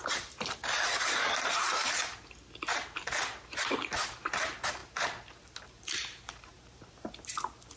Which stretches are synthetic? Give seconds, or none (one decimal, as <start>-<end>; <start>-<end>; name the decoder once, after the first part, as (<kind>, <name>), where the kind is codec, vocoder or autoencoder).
0.0-0.6 (vocoder, BigVGAN v2); 1.4-7.8